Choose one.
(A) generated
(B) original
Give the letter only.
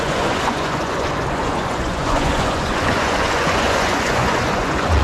A